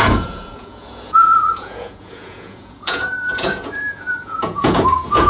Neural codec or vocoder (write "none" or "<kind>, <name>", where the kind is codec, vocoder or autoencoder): vocoder, Vocos